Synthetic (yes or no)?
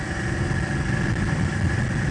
no